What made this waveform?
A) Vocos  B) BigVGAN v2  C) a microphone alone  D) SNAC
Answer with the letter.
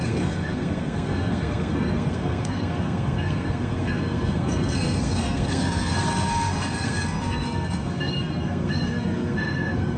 D